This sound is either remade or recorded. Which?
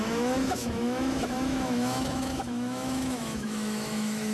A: remade